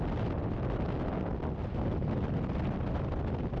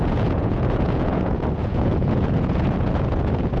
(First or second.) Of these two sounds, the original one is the first